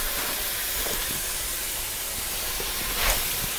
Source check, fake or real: fake